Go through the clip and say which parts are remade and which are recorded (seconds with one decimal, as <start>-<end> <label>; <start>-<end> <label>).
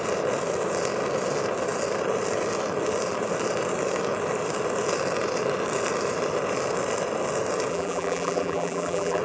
0.0-7.7 recorded; 7.7-9.2 remade